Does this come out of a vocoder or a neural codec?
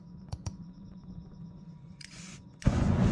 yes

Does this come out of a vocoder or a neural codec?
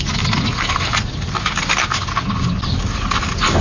no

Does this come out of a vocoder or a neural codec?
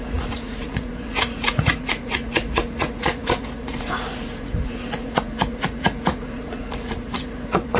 yes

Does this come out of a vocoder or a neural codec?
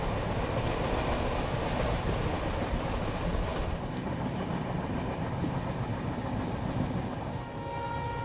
no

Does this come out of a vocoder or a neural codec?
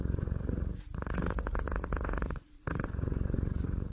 yes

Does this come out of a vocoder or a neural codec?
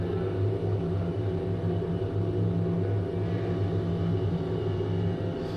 no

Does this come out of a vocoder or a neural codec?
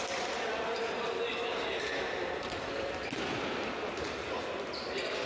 no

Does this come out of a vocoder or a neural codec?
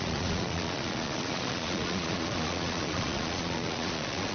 yes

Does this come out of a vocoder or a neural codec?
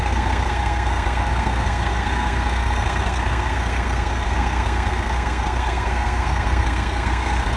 yes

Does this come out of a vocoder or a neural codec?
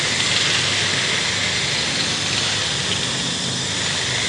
no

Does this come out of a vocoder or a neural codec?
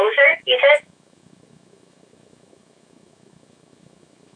yes